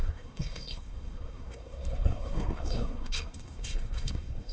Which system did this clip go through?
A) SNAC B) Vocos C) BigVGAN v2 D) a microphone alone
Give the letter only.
A